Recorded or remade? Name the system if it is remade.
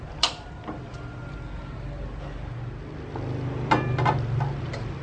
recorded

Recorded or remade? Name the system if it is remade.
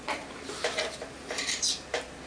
remade, vocoder, BigVGAN v2